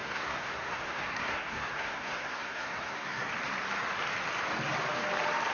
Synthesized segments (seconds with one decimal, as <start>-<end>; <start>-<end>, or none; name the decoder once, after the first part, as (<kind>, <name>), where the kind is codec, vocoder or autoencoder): 0.0-3.3 (codec, SNAC)